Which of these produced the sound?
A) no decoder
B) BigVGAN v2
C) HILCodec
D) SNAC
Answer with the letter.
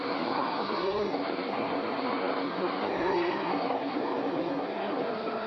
D